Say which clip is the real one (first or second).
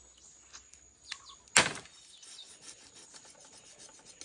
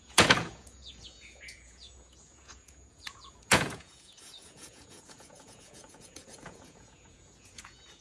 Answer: first